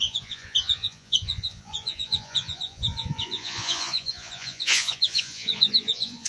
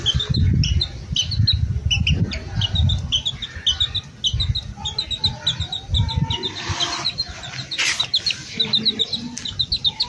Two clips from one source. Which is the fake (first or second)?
first